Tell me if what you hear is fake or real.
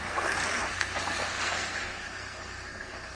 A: fake